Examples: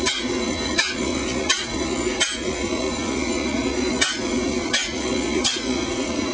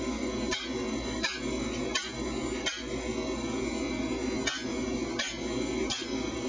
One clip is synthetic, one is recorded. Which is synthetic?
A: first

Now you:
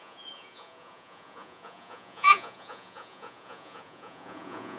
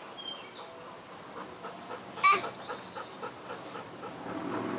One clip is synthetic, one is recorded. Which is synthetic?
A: first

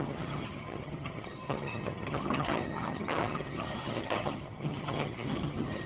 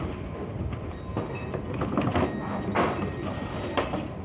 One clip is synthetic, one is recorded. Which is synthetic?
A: first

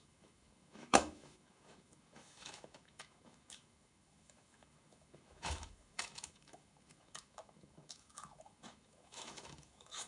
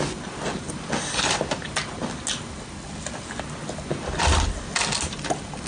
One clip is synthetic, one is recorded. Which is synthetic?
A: first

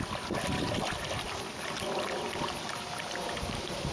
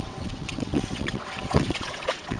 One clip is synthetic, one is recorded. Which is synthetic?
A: second